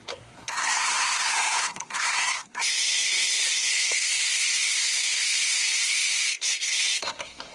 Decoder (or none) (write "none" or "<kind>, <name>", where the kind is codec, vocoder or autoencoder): codec, SNAC